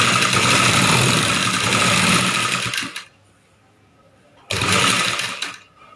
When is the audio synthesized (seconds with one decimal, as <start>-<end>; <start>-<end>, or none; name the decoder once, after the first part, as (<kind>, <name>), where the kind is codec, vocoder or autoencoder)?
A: none